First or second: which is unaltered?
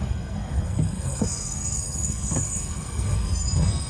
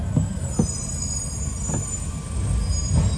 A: second